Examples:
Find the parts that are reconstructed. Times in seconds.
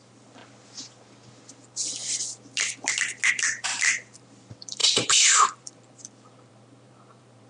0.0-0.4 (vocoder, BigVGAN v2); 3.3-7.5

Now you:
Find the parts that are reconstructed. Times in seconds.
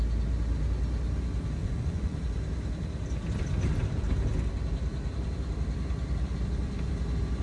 1.6-2.2 (vocoder, Vocos)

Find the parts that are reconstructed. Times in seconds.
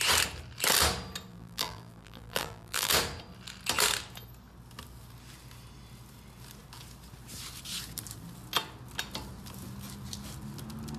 1.3-2.9 (vocoder, BigVGAN v2)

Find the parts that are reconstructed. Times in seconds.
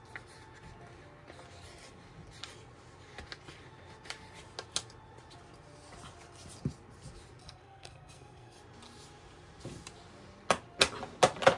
7.4-8.6 (codec, SNAC)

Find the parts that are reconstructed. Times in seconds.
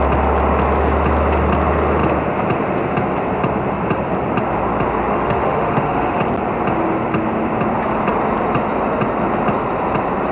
5.1-6.2 (autoencoder, DAC-VAE)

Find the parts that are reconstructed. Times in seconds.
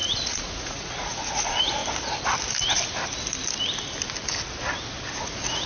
0.0-1.8 (vocoder, Vocos); 5.2-5.7